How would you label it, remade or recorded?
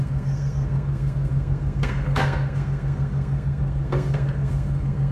remade